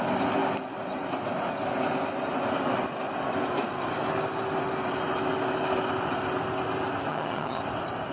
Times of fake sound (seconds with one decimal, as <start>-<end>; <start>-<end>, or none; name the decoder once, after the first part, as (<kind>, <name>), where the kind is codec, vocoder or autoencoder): 7.1-7.6 (vocoder, HiFi-GAN)